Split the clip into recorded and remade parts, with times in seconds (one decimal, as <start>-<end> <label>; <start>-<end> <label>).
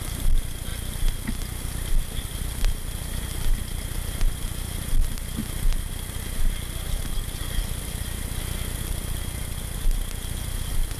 0.0-11.0 recorded